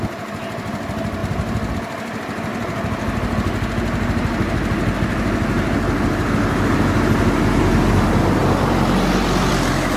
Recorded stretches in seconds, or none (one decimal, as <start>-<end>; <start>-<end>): 0.0-10.0